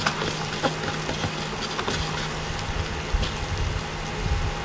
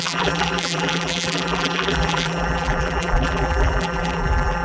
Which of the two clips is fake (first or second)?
second